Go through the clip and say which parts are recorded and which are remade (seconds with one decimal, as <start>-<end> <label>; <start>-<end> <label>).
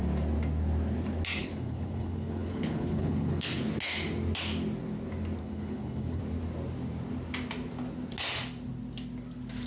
0.0-1.4 recorded; 1.4-3.5 remade; 3.5-5.4 recorded; 5.4-6.2 remade; 6.2-9.7 recorded